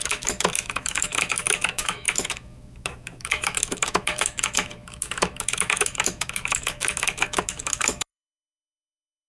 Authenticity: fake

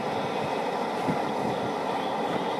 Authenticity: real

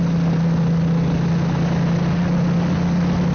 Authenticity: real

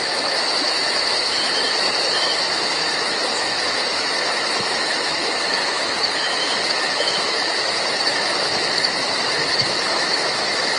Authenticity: fake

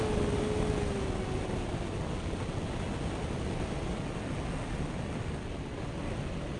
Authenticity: real